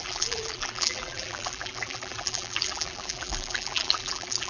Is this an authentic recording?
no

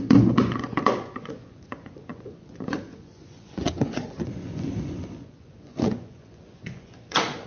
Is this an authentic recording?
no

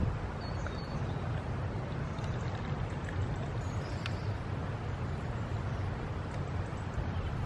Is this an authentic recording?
yes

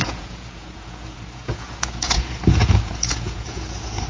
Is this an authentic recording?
no